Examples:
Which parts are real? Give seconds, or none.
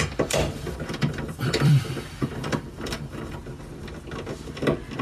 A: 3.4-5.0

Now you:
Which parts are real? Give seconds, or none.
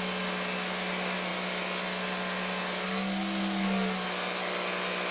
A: 0.0-5.1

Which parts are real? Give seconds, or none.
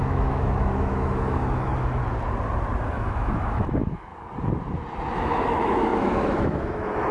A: 2.0-2.9; 4.1-5.2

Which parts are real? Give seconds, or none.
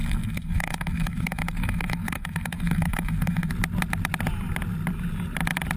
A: 3.5-5.8